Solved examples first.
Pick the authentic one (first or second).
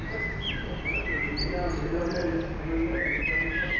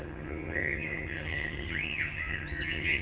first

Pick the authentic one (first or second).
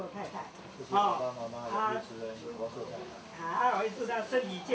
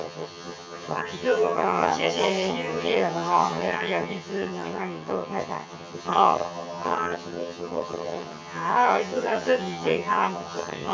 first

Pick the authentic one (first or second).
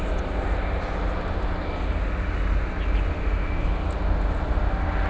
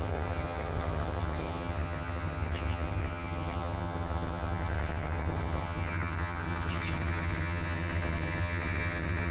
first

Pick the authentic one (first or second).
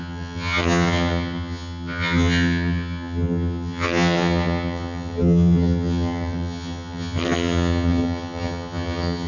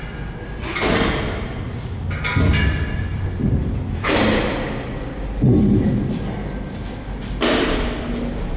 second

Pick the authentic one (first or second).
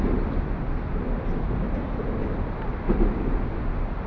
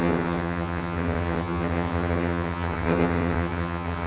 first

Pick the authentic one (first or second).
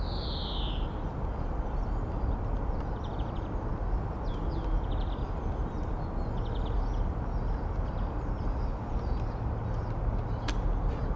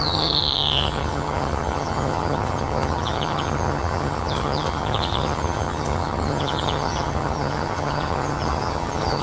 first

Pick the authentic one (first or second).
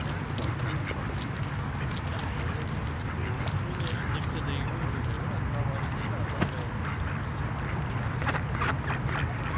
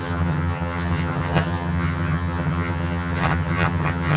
first